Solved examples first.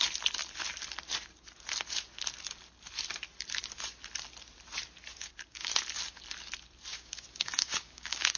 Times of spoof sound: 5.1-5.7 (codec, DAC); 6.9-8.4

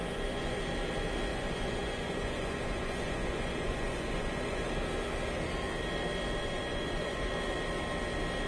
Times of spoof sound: 0.0-0.6 (vocoder, Vocos); 1.3-4.6; 6.4-7.3

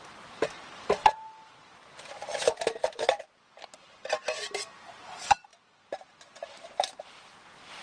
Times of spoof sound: none

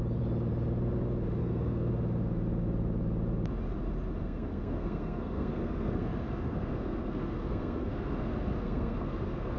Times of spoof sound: 1.4-1.9 (codec, SNAC); 4.2-9.6

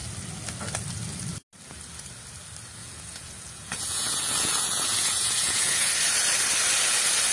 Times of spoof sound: 2.8-5.9 (vocoder, Vocos)

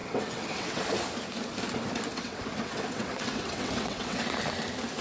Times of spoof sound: 0.0-0.8 (vocoder, WaveNeXt); 2.1-4.2